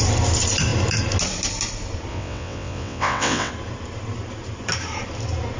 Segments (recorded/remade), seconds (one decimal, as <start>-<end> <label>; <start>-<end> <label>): 0.0-2.1 recorded; 2.1-3.5 remade; 3.5-5.6 recorded